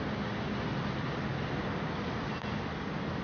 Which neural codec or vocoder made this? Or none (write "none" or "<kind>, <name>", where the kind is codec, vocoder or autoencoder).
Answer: none